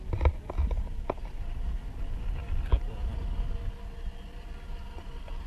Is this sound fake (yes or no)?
no